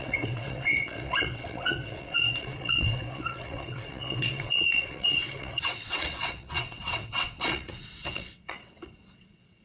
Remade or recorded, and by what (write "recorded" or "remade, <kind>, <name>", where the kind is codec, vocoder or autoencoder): remade, vocoder, WaveNeXt